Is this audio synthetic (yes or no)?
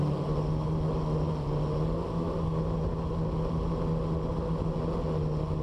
no